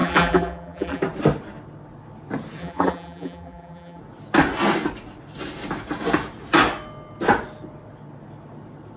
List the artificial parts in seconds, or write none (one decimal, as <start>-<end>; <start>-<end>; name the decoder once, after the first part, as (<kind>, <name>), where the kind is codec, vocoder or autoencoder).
0.0-1.0 (vocoder, BigVGAN v2); 2.6-4.0